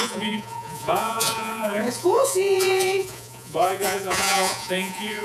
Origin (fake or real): fake